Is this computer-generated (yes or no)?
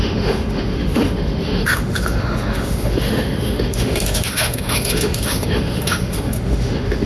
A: yes